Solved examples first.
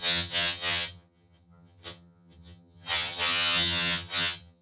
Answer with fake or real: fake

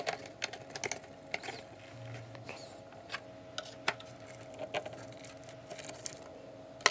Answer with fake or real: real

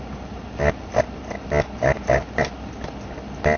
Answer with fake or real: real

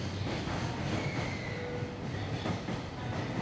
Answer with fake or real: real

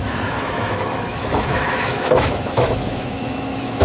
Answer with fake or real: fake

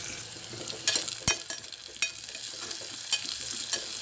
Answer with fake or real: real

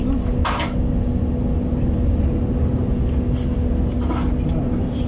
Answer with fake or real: real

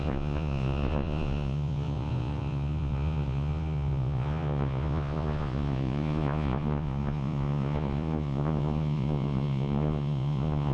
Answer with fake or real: fake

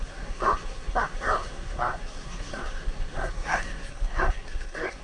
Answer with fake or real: fake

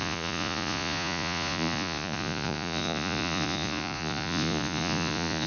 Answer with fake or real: fake